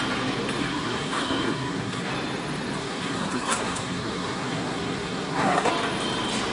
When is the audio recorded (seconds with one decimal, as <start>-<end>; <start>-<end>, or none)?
0.0-0.6; 2.1-2.8; 5.7-6.5